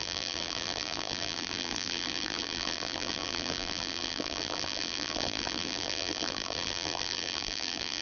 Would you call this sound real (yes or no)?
no